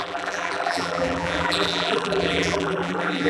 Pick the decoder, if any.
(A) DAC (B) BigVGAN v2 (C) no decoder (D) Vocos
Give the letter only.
B